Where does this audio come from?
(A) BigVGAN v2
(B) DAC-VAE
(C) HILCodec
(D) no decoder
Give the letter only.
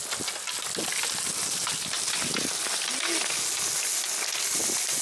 D